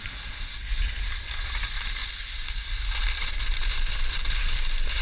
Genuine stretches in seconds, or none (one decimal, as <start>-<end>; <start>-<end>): 0.0-5.0